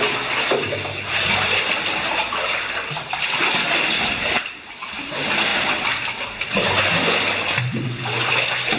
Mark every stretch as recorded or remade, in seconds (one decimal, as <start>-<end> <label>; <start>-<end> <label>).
0.0-4.2 recorded; 4.2-4.9 remade; 4.9-7.7 recorded; 7.7-8.3 remade; 8.3-8.8 recorded